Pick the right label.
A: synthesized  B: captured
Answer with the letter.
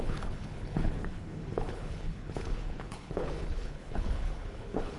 A